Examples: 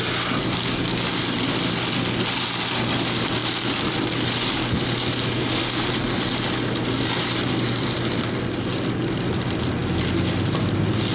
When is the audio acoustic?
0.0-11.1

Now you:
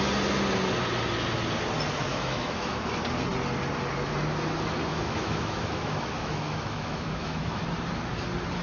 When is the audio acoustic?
0.0-2.1; 2.8-4.9; 7.6-8.6

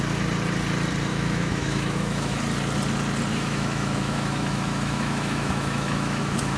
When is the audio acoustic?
0.0-1.1; 2.4-3.3

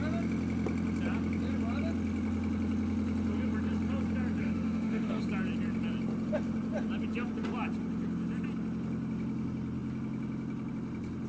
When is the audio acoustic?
0.0-4.4; 5.2-11.3